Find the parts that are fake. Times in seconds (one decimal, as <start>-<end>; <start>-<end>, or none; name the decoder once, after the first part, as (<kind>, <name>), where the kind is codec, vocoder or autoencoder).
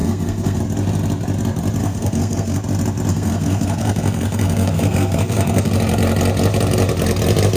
0.0-0.6 (codec, SNAC); 1.8-2.6; 3.1-5.7